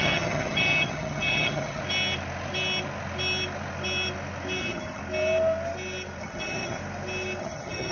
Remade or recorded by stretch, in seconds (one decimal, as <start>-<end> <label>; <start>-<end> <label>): 0.0-1.8 remade; 1.8-4.6 recorded; 4.6-5.0 remade; 5.0-6.2 recorded; 6.2-6.8 remade; 6.8-7.4 recorded; 7.4-7.9 remade